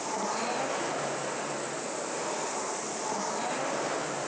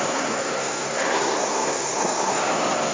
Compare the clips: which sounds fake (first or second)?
second